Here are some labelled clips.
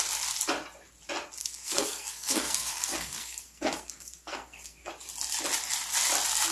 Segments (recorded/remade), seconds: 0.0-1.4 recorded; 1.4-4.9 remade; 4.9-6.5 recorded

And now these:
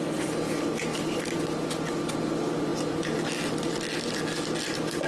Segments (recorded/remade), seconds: 0.0-5.1 recorded

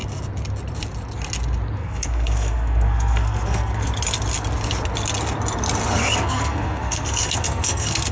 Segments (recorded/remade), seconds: 0.0-1.8 recorded; 1.8-3.9 remade; 3.9-6.0 recorded; 6.0-8.1 remade